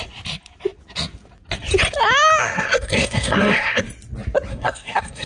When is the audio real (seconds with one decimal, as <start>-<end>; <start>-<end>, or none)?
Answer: 0.0-2.4; 3.8-4.5